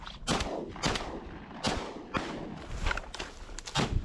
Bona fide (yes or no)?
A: yes